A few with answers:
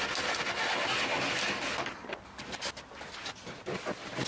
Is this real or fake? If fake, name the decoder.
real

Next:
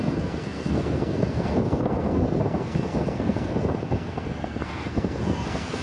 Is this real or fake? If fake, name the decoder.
fake, codec, SNAC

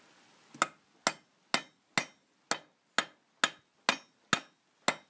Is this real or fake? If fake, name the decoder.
real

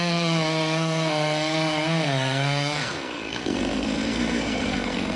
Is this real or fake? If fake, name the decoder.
fake, codec, SNAC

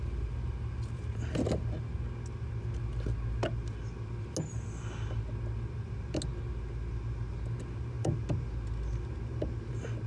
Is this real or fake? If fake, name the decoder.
real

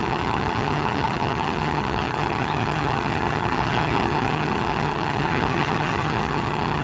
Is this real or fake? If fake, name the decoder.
fake, vocoder, HiFi-GAN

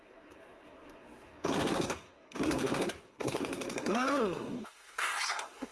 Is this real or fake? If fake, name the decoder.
fake, codec, SNAC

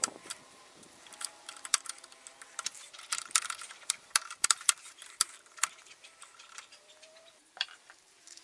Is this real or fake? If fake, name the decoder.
fake, vocoder, BigVGAN v2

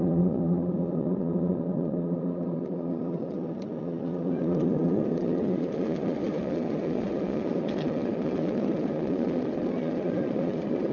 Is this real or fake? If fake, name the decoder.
fake, vocoder, Vocos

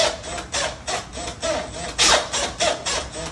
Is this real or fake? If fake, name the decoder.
real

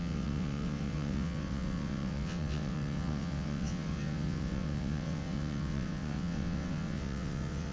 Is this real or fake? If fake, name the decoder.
fake, vocoder, WaveNeXt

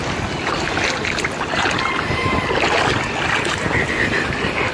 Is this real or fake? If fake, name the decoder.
real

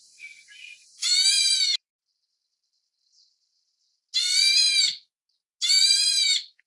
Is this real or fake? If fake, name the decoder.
real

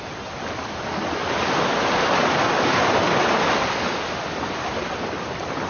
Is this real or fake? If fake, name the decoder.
real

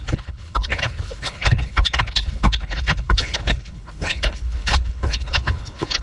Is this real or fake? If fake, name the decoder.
fake, codec, HILCodec